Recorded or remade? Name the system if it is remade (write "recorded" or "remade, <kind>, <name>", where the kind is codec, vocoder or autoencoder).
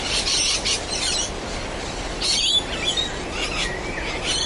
recorded